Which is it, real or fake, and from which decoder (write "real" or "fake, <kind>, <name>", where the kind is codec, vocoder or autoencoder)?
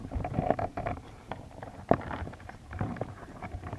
fake, vocoder, BigVGAN v2